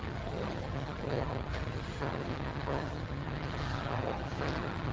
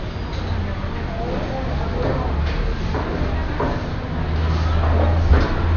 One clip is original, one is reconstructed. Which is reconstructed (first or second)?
first